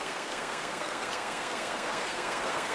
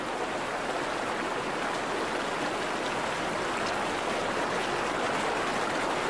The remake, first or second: first